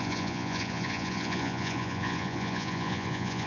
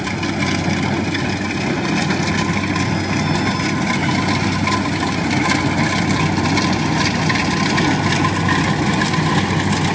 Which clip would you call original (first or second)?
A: second